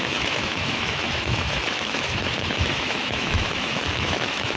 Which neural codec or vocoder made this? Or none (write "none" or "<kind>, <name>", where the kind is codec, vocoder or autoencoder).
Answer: autoencoder, DAC-VAE